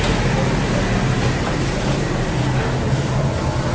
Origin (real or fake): real